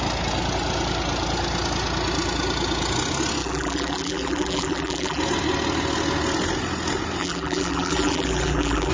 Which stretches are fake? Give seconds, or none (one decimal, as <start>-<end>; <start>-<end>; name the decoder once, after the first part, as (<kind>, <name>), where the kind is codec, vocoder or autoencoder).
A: 3.4-5.2 (vocoder, BigVGAN v2); 7.2-8.9